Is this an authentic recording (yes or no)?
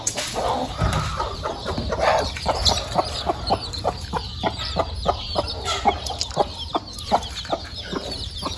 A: no